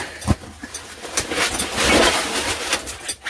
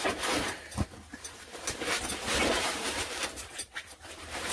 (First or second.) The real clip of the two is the first